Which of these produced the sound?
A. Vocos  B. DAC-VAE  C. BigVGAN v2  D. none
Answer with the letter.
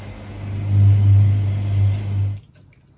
D